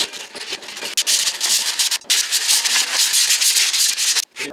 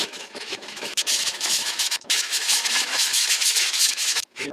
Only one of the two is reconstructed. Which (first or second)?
second